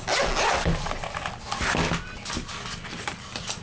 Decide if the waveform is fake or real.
real